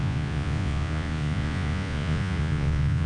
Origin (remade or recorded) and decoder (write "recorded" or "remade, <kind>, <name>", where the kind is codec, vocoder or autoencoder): remade, vocoder, Vocos